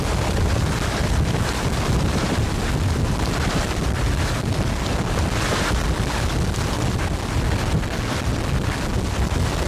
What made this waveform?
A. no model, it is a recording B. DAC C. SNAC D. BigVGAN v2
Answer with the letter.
A